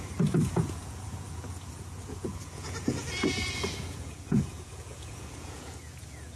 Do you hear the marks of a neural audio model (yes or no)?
yes